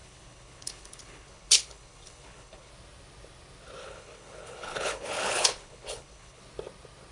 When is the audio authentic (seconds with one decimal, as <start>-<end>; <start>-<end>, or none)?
2.7-3.8; 6.4-7.1